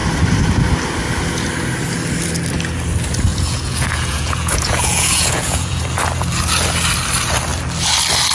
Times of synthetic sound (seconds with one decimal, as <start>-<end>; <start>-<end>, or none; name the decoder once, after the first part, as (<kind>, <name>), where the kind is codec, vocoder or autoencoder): 3.3-5.8 (vocoder, Vocos)